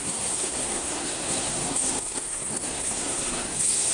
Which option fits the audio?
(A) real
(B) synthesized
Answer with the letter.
B